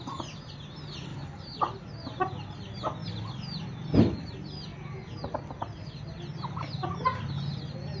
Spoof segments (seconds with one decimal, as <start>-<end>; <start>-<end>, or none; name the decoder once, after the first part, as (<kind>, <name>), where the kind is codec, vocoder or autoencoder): 1.1-1.8 (vocoder, BigVGAN v2); 3.0-3.6; 4.7-7.2

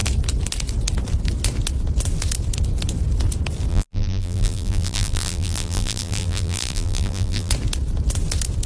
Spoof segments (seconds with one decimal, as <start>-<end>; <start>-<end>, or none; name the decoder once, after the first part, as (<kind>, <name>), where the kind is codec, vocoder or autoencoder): 3.7-7.5 (vocoder, BigVGAN v2)

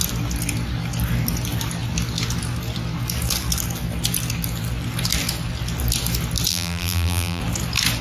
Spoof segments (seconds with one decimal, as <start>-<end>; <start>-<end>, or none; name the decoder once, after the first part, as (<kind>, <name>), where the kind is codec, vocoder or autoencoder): 6.5-7.4 (vocoder, BigVGAN v2)

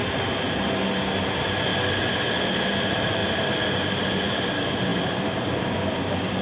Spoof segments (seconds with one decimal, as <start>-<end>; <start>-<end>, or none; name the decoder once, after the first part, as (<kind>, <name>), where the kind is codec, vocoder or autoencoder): 1.2-1.7 (vocoder, BigVGAN v2); 2.3-3.2; 3.9-6.4

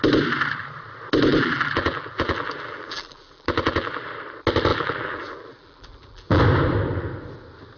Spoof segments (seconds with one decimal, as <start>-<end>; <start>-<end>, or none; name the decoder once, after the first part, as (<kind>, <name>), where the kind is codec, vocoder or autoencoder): 1.3-4.1 (vocoder, BigVGAN v2); 4.7-6.4

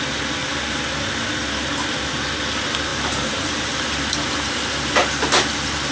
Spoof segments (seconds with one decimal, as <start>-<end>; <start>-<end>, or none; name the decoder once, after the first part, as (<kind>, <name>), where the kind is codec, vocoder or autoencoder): 2.9-3.7 (vocoder, BigVGAN v2)

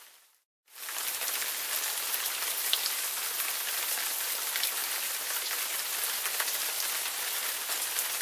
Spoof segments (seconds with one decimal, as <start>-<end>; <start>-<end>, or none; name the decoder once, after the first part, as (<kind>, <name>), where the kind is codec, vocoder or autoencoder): none